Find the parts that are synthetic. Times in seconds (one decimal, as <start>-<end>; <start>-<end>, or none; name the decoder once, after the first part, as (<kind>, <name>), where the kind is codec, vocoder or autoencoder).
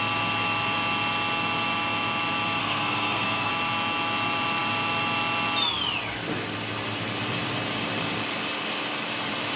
2.6-3.5 (codec, SNAC)